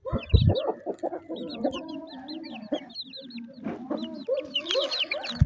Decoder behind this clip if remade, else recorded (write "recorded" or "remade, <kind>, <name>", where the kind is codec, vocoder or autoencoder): recorded